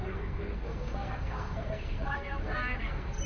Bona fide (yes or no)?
no